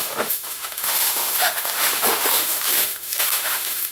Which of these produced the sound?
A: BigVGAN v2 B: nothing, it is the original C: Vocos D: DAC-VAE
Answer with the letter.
D